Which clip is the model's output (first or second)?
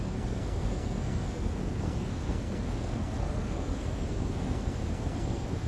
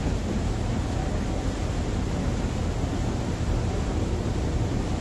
first